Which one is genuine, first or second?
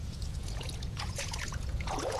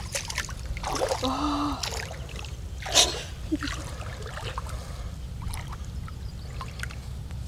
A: second